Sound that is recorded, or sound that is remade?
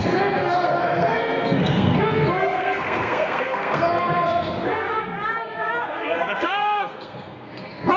remade